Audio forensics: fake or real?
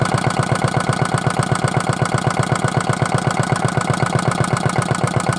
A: real